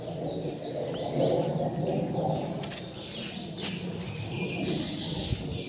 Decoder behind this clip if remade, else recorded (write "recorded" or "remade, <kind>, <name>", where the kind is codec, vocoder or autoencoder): recorded